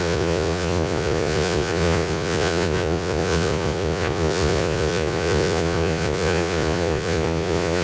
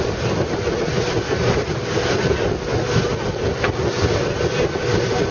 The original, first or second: second